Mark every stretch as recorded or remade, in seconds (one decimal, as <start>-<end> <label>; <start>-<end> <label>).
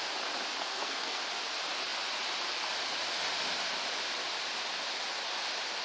0.0-0.6 recorded; 0.6-1.2 remade; 1.2-5.8 recorded